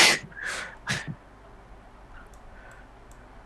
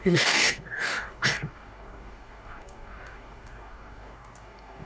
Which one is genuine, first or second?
first